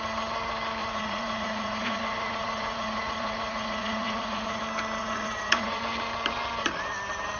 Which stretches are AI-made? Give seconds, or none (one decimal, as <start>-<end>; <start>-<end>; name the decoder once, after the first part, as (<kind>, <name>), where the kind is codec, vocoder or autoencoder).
0.8-4.6 (vocoder, Vocos); 5.0-5.8